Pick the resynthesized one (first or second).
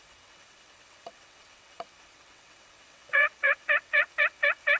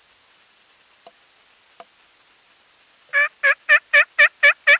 first